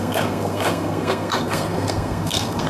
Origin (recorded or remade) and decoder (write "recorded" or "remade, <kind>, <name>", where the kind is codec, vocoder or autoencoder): remade, codec, SNAC